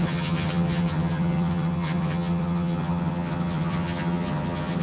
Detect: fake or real fake